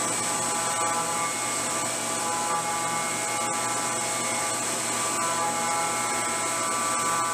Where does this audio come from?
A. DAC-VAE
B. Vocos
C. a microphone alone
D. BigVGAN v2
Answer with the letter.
C